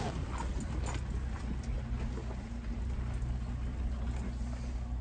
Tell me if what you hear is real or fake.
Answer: real